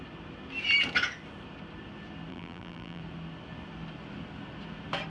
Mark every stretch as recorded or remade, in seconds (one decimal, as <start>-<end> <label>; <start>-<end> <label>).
0.0-2.3 recorded; 2.3-3.0 remade; 3.0-5.1 recorded